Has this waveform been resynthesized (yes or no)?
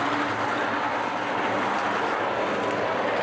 no